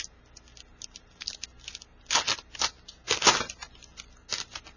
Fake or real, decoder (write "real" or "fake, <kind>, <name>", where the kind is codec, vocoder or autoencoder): real